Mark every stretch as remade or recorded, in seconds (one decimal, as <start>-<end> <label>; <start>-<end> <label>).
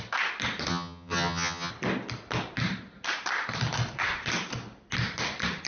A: 0.0-0.7 recorded; 0.7-1.7 remade; 1.7-5.7 recorded